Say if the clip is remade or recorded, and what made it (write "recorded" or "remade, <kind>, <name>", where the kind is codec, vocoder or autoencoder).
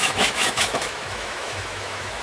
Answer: remade, autoencoder, DAC-VAE